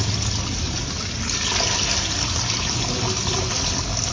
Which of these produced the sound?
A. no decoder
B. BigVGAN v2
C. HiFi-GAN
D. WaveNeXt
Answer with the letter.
A